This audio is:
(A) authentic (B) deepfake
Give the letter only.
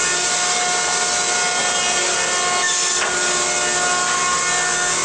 A